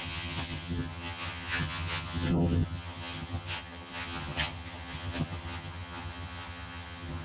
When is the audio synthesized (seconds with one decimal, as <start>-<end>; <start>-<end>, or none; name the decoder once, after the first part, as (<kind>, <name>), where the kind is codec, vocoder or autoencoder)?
0.0-7.2 (vocoder, HiFi-GAN)